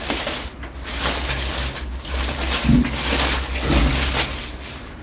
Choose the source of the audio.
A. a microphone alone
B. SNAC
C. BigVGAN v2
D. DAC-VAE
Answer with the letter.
A